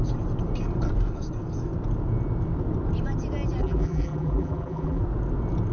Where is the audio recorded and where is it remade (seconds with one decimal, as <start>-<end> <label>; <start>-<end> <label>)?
0.0-3.6 recorded; 3.6-5.0 remade; 5.0-5.7 recorded